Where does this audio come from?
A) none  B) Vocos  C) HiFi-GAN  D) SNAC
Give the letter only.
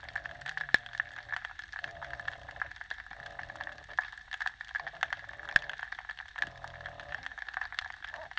A